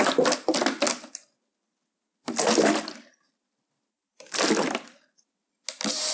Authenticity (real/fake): real